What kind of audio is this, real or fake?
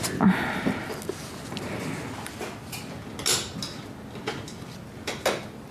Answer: real